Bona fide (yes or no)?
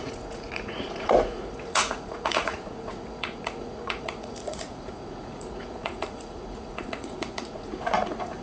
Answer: no